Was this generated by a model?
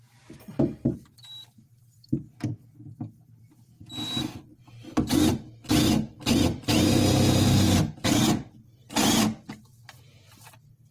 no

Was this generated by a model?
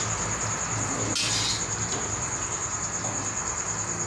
no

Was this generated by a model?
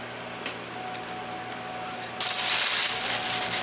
no